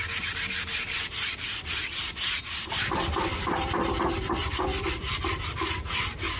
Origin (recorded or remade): remade